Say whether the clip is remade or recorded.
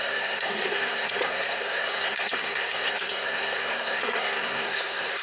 remade